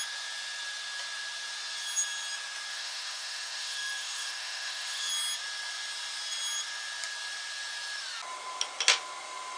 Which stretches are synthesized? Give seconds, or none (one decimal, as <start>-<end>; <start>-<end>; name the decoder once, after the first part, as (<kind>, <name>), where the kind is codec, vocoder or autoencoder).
2.7-5.1 (autoencoder, DAC-VAE)